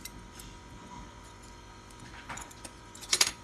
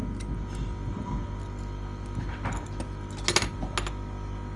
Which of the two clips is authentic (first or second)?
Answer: second